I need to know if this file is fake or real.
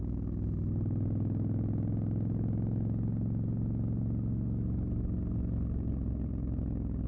real